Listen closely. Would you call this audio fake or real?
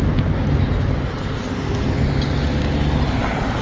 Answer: real